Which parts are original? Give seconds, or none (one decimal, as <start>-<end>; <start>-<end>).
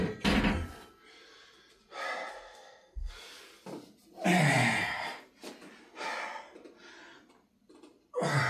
0.0-2.3; 3.1-8.5